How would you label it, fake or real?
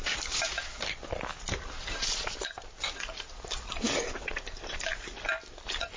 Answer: real